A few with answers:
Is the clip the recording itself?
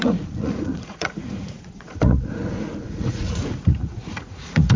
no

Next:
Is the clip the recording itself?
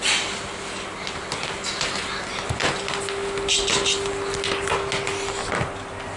yes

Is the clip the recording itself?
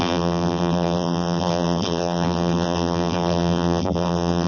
no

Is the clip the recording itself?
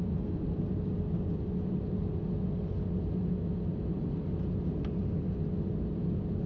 yes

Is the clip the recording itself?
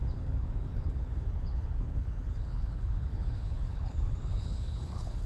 no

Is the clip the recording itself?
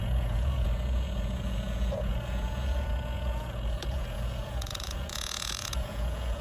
no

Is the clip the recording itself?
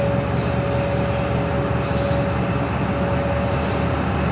yes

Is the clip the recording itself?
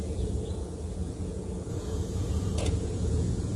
no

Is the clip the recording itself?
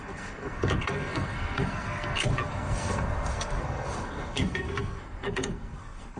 no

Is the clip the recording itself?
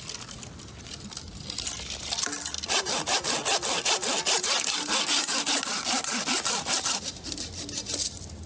yes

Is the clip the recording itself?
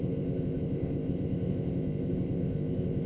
no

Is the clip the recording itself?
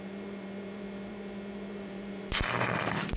no